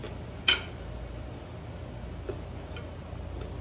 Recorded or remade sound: recorded